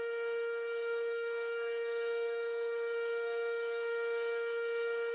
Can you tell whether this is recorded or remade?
remade